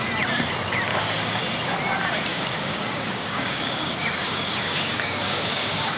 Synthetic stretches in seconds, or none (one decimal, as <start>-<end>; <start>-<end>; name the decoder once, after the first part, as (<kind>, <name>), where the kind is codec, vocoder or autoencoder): 0.9-1.4 (codec, DAC); 2.3-6.0